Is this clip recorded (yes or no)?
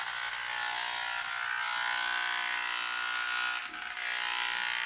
yes